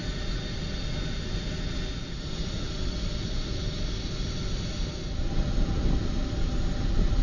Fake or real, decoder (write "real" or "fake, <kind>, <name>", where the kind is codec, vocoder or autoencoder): real